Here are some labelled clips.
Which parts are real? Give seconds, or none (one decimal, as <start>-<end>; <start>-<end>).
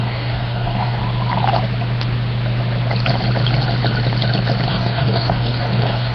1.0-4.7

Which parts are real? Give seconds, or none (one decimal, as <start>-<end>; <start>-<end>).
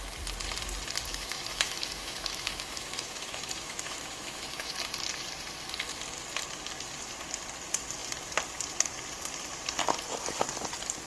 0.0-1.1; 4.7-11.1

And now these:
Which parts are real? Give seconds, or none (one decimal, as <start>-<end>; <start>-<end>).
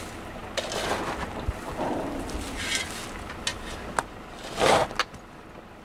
0.0-5.8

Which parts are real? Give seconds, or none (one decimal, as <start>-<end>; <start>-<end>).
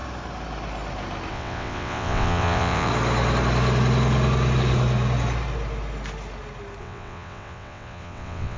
0.0-1.3; 2.9-6.8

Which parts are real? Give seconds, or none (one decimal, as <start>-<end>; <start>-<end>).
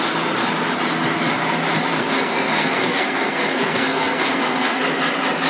0.0-1.9; 4.8-5.5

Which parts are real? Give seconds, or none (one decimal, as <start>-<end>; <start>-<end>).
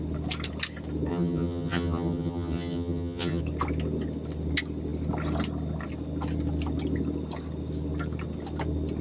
0.0-1.1; 3.4-9.0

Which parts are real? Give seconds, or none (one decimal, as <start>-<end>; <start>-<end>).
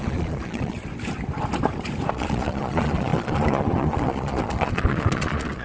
0.8-2.1